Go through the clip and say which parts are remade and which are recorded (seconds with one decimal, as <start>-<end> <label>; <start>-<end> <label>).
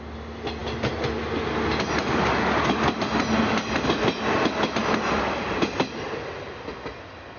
0.0-7.4 recorded